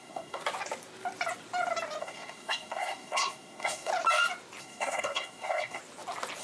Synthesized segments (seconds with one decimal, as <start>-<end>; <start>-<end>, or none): 0.0-0.4; 2.0-3.9; 4.6-5.8